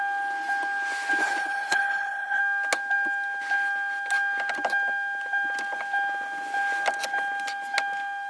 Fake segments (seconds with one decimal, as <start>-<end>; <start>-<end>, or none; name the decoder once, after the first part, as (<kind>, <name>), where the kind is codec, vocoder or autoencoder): 1.2-2.4 (codec, HILCodec)